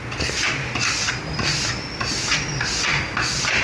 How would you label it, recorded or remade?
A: recorded